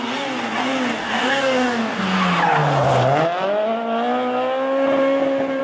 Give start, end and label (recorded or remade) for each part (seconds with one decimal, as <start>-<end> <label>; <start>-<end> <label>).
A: 0.0-1.0 recorded; 1.0-2.0 remade; 2.0-5.6 recorded